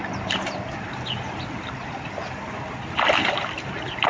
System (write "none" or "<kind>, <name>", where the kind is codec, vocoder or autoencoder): none